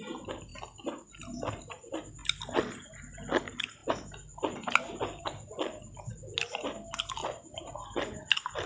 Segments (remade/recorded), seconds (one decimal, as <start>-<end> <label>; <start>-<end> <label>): 0.0-8.7 recorded